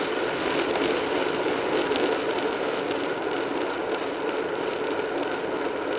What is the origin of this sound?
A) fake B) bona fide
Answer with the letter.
B